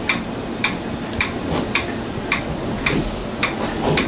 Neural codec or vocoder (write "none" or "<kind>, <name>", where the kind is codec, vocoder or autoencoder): none